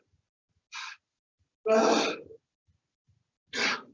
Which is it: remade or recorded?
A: recorded